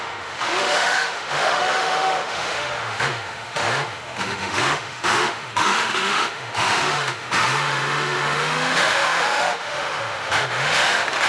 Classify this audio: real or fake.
fake